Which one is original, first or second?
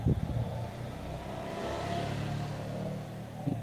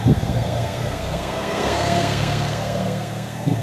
first